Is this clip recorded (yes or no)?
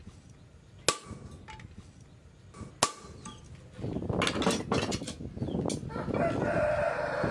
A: yes